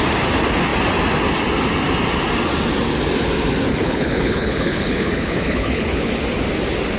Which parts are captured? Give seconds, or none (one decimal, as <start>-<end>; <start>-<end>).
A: 0.0-3.7; 6.2-7.0